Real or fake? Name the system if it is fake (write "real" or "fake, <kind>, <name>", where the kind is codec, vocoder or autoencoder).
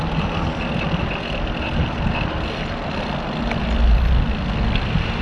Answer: real